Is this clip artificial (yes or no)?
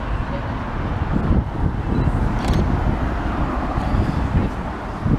no